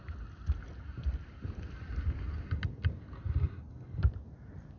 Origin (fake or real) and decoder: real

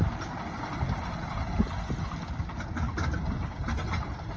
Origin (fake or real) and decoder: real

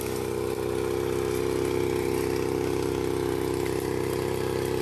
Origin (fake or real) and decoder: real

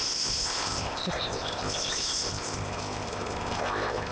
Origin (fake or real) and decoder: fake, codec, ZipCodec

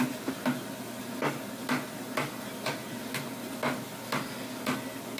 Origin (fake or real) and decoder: real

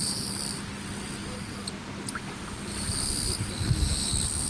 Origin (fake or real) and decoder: real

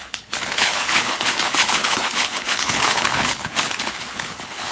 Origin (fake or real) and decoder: fake, codec, HILCodec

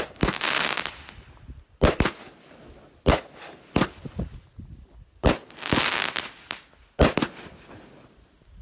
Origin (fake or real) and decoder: real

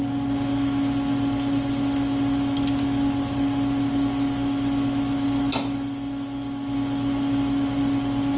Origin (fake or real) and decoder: real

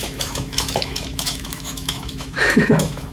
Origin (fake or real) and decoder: fake, autoencoder, DAC-VAE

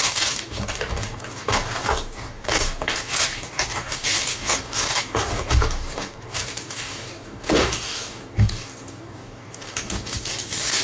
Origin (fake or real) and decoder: fake, codec, DAC